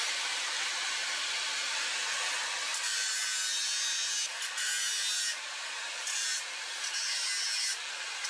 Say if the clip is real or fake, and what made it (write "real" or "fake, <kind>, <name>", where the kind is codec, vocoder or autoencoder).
real